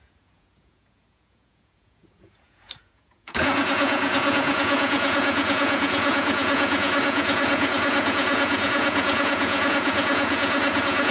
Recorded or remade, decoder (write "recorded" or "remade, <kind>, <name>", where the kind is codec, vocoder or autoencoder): remade, vocoder, Vocos